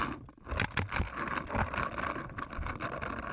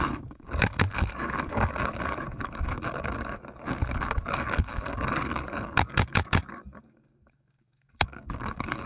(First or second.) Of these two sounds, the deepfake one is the second